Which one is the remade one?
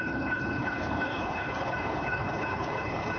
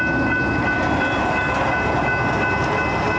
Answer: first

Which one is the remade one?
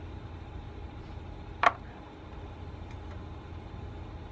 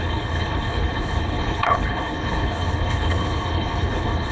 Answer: second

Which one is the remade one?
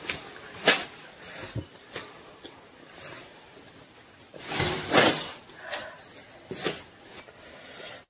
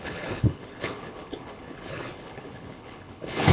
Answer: second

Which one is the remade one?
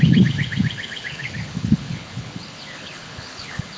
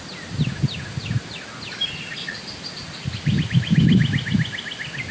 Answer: first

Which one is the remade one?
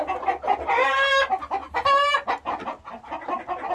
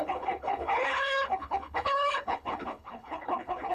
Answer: second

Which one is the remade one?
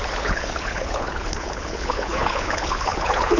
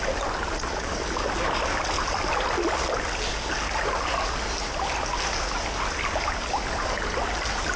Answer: first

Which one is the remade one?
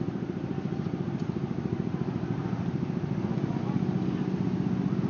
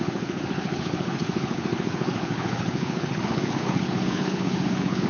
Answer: second